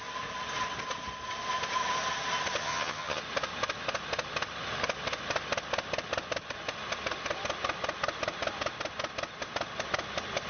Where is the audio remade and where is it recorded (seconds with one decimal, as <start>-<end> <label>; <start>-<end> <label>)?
0.0-2.6 recorded; 2.6-3.2 remade; 3.2-10.5 recorded